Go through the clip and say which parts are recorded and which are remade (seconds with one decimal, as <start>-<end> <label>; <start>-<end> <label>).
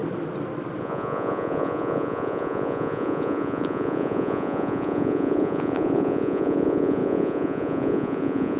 0.0-0.8 recorded; 0.8-8.6 remade